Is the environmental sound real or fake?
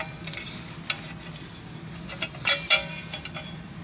real